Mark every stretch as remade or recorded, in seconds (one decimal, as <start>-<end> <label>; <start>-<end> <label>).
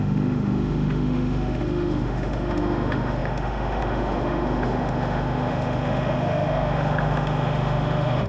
0.0-8.3 remade